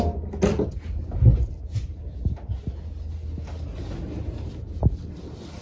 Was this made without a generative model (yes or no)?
yes